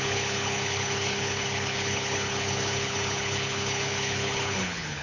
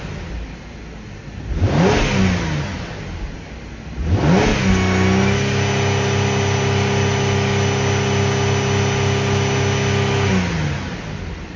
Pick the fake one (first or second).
first